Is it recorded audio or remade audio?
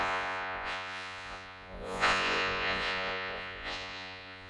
remade